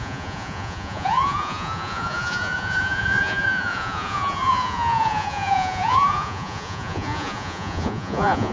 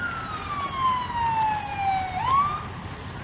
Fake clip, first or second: first